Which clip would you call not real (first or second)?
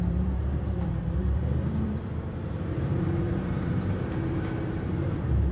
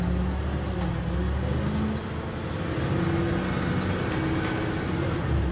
first